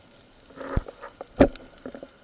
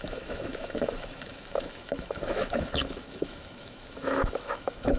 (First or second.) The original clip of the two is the first